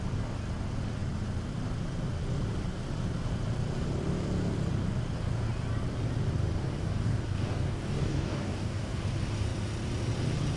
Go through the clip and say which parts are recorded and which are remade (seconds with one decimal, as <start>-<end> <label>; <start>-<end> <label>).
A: 0.0-6.8 recorded; 6.8-9.0 remade; 9.0-10.6 recorded